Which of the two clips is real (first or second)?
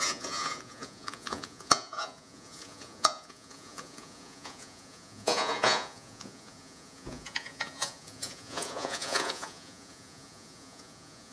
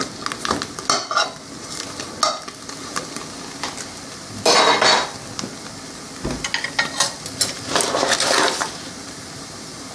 second